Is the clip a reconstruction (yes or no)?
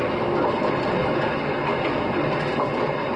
no